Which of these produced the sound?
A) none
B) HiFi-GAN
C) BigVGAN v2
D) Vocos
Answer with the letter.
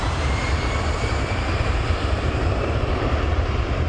C